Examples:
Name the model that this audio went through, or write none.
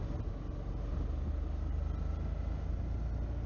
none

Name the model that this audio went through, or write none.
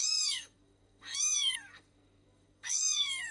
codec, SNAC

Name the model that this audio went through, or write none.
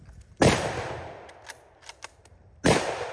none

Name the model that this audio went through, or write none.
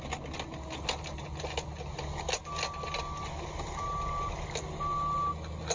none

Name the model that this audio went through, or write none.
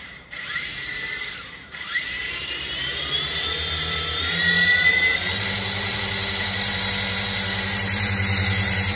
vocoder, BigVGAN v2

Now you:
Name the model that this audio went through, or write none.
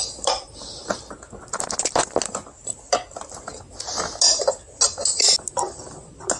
none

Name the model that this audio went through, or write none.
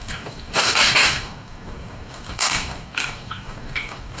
codec, DAC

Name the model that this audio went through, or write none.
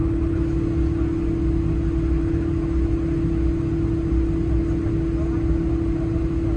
none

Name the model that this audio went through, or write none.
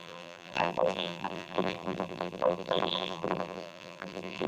vocoder, BigVGAN v2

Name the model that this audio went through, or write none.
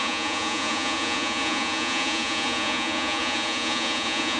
vocoder, Vocos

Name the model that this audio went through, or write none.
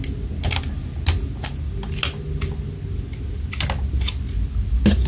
none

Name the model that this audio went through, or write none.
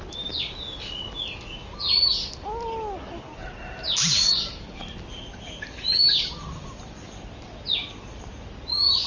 none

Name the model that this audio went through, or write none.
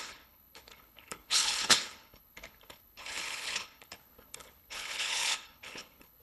codec, HILCodec